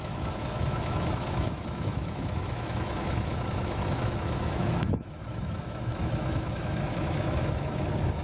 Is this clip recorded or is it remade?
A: remade